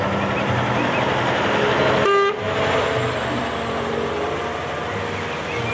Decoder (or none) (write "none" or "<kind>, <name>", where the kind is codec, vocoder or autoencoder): none